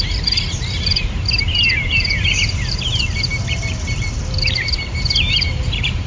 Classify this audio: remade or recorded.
remade